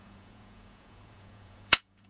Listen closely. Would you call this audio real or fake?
fake